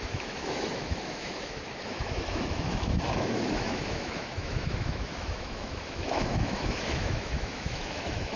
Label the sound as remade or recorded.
remade